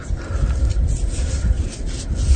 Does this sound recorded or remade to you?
recorded